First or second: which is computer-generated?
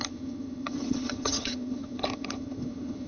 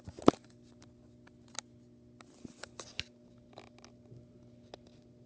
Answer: first